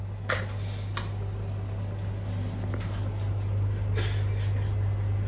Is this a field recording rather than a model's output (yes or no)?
yes